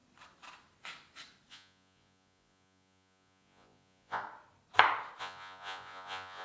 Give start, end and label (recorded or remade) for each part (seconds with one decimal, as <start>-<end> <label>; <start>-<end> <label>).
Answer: 0.0-1.5 recorded; 1.5-4.2 remade; 4.2-5.2 recorded; 5.2-6.4 remade